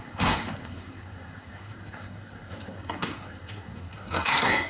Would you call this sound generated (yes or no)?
yes